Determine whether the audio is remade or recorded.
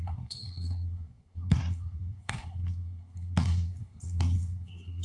remade